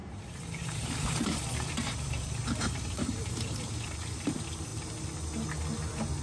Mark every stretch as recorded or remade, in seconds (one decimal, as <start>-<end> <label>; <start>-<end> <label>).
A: 0.0-3.7 remade; 3.7-6.2 recorded